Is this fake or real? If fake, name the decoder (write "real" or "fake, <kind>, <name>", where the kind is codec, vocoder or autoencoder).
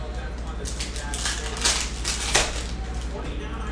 real